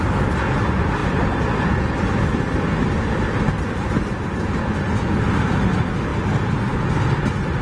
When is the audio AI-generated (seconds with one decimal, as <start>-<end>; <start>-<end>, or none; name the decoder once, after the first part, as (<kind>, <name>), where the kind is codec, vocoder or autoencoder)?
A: none